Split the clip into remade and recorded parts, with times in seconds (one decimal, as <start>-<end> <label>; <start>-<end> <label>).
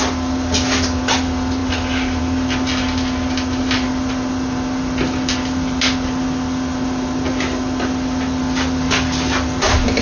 0.0-10.0 recorded